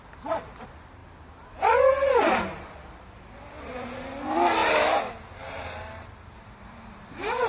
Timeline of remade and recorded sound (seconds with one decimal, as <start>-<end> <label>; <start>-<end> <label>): 0.0-7.5 recorded